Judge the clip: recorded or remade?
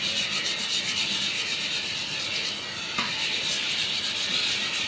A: recorded